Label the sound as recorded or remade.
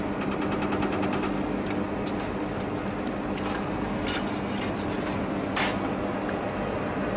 recorded